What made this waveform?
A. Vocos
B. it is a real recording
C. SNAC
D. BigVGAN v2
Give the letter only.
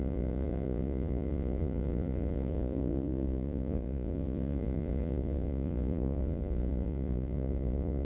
A